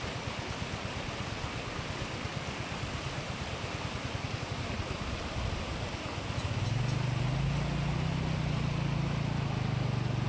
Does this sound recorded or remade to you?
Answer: recorded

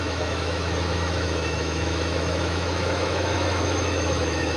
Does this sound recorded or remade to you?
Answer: remade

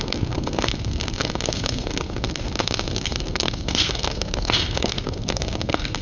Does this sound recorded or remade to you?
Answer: remade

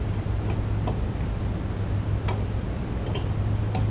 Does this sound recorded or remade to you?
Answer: recorded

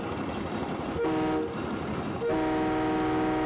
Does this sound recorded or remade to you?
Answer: recorded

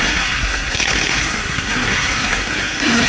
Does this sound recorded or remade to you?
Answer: remade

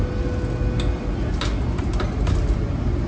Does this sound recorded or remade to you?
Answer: recorded